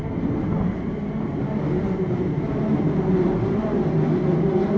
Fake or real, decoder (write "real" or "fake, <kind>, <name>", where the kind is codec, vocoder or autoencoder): real